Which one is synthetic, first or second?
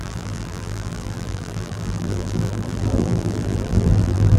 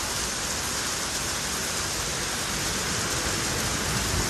first